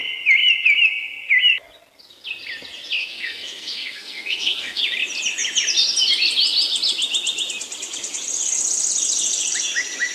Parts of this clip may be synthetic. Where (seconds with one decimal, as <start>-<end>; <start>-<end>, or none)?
3.0-4.8